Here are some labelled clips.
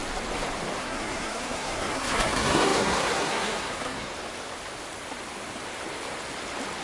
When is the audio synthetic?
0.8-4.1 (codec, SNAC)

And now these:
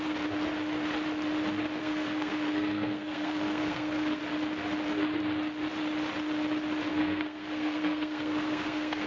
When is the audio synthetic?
1.8-4.2 (codec, SNAC); 6.9-9.1

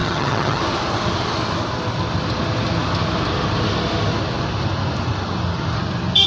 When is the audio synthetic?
0.0-0.6 (vocoder, HiFi-GAN)